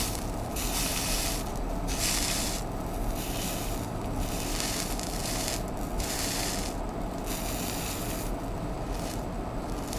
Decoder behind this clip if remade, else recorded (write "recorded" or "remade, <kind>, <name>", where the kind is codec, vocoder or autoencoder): recorded